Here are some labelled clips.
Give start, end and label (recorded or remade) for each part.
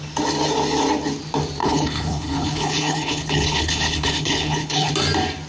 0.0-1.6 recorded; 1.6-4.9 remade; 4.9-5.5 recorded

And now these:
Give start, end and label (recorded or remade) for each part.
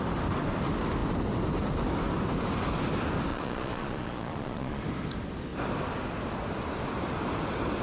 0.0-3.3 recorded; 3.3-4.8 remade; 4.8-7.8 recorded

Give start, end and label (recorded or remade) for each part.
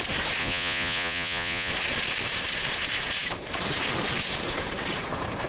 0.0-0.4 recorded; 0.4-1.7 remade; 1.7-5.5 recorded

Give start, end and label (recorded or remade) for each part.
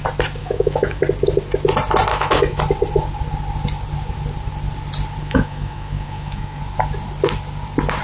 0.0-0.4 recorded; 0.4-1.0 remade; 1.0-2.1 recorded; 2.1-2.6 remade; 2.6-5.2 recorded; 5.2-6.6 remade; 6.6-8.0 recorded